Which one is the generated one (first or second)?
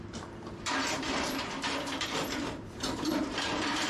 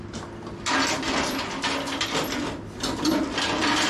first